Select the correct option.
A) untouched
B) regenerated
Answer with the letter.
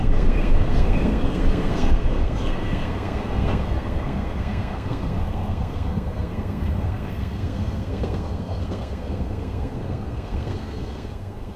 B